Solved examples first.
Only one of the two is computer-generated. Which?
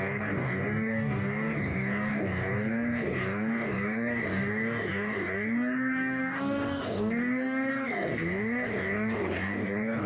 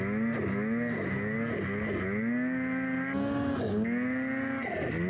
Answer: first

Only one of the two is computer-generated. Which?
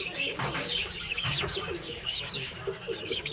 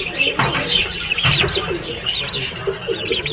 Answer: first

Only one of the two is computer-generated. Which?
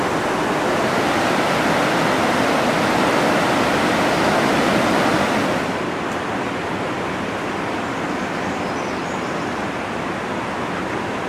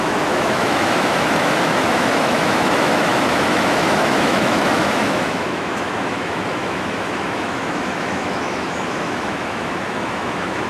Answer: second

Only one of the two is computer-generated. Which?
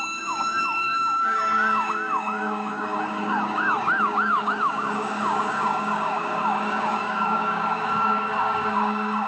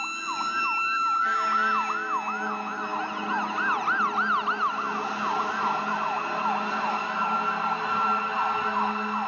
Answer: first